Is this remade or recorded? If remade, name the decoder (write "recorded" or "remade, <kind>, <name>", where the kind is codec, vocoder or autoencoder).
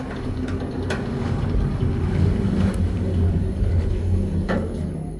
remade, codec, DAC